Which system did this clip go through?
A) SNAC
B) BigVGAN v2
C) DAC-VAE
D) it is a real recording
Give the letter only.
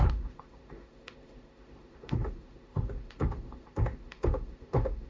C